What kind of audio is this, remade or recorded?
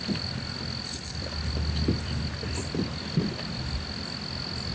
recorded